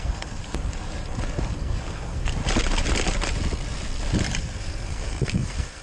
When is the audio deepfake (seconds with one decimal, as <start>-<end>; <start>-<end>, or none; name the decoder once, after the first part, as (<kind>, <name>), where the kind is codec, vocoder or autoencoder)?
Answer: 0.0-0.4 (codec, SNAC); 1.6-2.4; 4.4-5.8